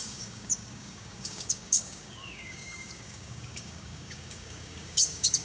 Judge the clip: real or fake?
fake